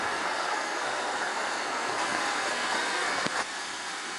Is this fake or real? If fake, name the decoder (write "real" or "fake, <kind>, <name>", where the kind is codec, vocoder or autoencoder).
fake, codec, SNAC